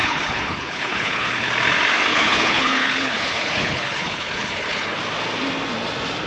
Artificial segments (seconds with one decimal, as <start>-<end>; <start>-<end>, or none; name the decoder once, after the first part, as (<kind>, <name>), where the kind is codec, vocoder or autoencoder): 0.0-1.5 (codec, HILCodec); 2.1-5.0